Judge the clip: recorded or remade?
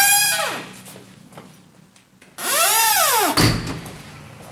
recorded